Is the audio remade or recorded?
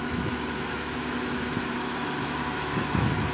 remade